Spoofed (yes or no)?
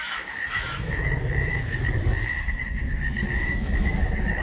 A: yes